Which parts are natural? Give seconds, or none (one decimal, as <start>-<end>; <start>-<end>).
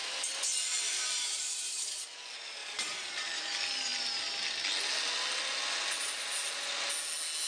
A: 2.0-2.6; 3.4-7.5